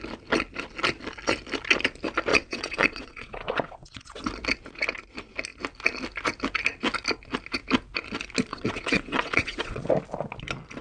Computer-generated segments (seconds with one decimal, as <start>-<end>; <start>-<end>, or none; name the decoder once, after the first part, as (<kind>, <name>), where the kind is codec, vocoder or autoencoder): 2.3-4.2 (vocoder, WaveNeXt); 8.5-9.9